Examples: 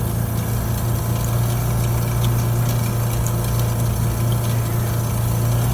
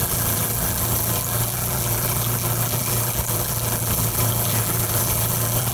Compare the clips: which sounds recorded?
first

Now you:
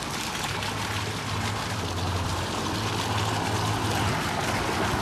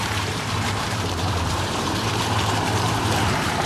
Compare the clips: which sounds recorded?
first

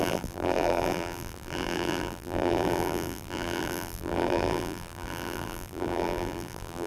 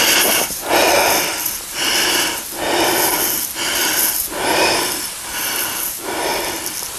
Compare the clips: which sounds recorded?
second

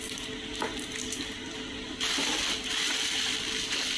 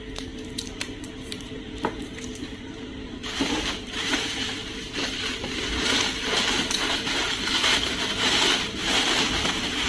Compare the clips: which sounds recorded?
first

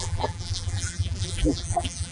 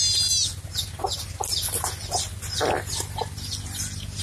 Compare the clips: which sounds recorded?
second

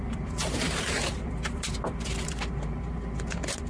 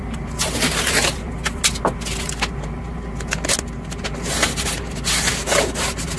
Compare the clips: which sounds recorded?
second